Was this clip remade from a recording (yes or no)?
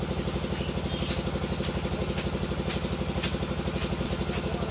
no